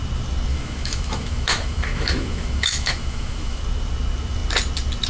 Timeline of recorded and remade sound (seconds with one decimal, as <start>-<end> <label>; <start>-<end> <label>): 0.0-0.5 recorded; 0.5-3.6 remade; 3.6-5.1 recorded